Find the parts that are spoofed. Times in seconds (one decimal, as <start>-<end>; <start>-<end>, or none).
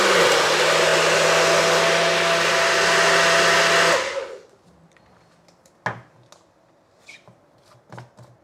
none